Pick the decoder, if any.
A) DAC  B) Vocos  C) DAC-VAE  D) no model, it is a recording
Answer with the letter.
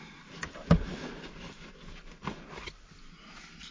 D